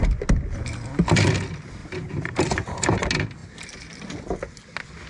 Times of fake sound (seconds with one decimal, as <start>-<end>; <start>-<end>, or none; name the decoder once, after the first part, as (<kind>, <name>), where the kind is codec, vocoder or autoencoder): 1.8-2.9 (vocoder, BigVGAN v2)